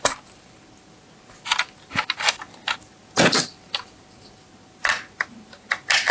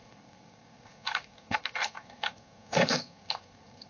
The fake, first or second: second